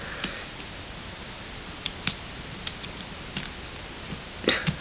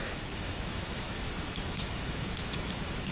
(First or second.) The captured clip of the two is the first